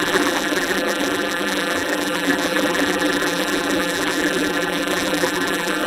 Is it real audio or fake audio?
fake